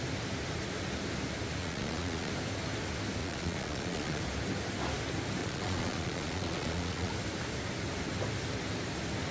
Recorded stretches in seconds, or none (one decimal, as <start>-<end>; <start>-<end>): 0.0-1.6; 2.3-3.2; 4.2-5.4; 7.1-9.3